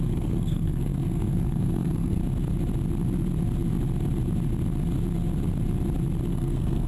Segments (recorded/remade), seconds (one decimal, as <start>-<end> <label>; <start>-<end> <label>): 0.0-2.2 remade; 2.2-6.3 recorded; 6.3-6.9 remade